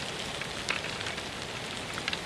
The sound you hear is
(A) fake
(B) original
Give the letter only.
B